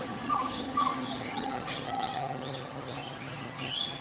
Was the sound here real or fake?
fake